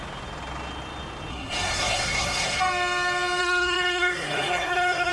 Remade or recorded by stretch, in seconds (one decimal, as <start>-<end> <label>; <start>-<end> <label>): 0.0-1.3 recorded; 1.3-2.6 remade; 2.6-3.4 recorded; 3.4-5.1 remade